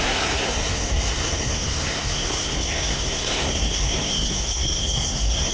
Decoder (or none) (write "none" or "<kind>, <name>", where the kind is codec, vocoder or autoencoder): codec, SNAC